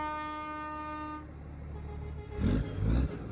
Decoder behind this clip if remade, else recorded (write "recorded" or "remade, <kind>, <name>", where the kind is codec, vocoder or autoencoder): recorded